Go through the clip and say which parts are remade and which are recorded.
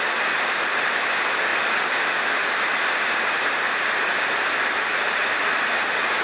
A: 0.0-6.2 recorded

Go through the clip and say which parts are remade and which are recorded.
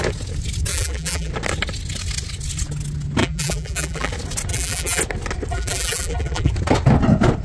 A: 0.0-0.7 recorded; 0.7-1.3 remade; 1.3-3.2 recorded; 3.2-4.1 remade; 4.1-4.5 recorded; 4.5-5.0 remade; 5.0-5.5 recorded; 5.5-6.5 remade; 6.5-7.4 recorded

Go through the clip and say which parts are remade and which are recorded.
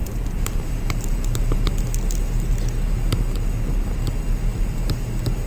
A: 0.0-1.6 remade; 1.6-5.5 recorded